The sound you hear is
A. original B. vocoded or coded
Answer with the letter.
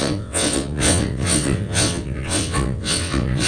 B